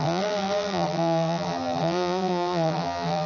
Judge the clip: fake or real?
fake